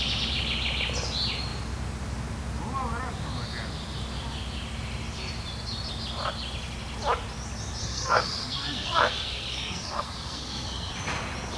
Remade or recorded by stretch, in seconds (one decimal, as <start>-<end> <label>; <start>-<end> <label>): 0.0-7.8 recorded; 7.8-10.9 remade; 10.9-11.6 recorded